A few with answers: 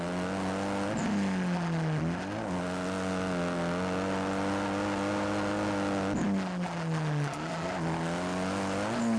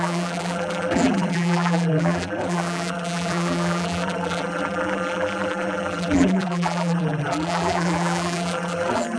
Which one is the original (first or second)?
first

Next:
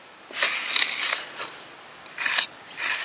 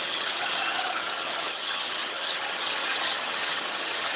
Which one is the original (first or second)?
first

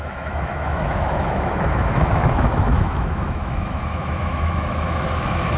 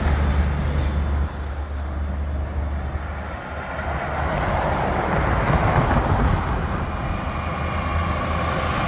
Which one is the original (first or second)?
second